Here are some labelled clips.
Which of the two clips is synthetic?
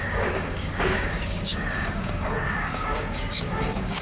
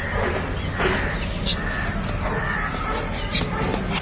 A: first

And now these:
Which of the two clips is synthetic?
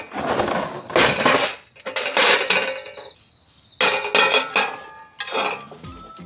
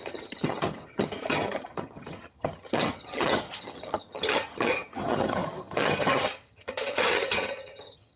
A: second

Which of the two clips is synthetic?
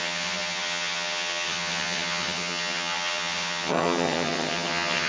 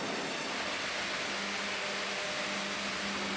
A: first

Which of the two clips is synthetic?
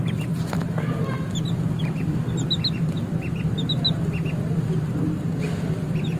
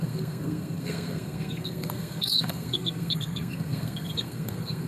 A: second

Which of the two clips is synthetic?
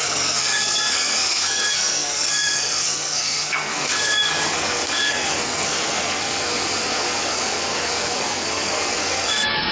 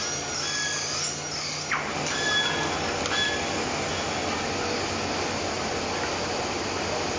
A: first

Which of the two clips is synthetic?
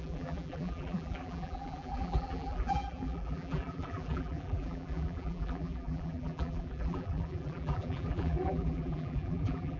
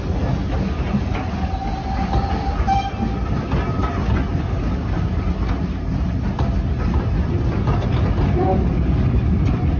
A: first